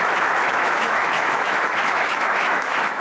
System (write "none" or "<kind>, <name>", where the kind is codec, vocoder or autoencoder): autoencoder, DAC-VAE